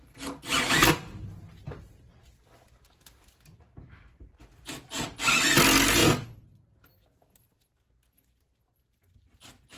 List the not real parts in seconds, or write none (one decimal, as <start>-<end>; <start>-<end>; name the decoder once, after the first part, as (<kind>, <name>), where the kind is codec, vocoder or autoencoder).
none